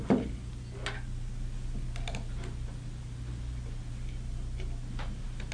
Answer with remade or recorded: recorded